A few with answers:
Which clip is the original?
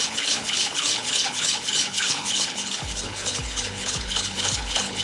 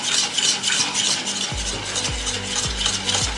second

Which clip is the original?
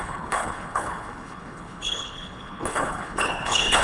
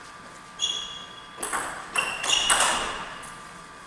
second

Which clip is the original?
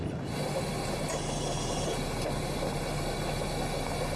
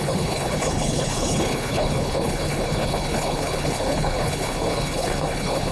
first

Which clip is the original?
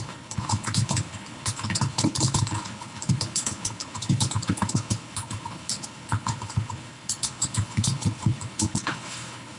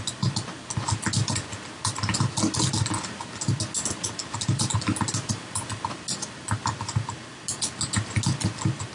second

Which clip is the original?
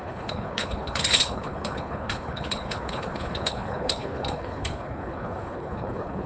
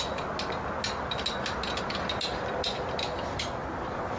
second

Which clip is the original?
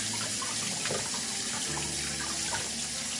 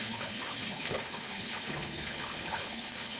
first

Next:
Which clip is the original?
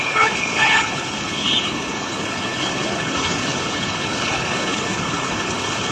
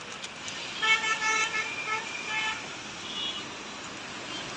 second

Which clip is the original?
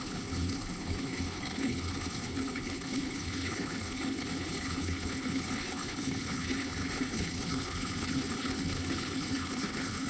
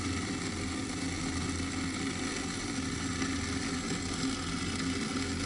second